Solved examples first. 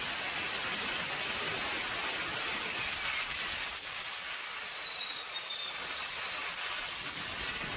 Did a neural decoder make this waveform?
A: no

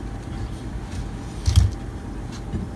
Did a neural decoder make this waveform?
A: no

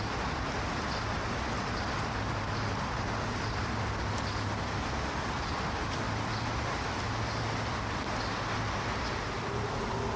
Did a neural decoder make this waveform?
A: no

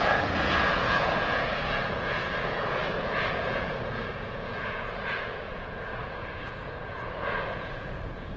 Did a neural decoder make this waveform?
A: yes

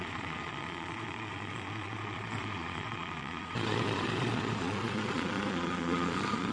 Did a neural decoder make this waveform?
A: yes